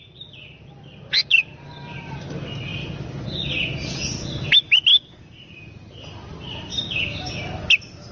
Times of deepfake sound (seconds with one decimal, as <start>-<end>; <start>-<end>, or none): 4.9-5.6; 6.7-7.3